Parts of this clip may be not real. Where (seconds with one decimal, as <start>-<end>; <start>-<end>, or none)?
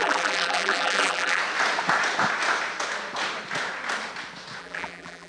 0.0-1.4; 4.6-5.3